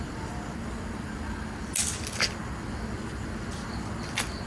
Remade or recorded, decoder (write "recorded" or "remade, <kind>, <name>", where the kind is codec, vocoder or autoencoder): recorded